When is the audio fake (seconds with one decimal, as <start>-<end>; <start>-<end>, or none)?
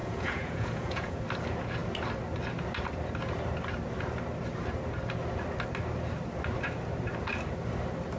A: 0.0-1.2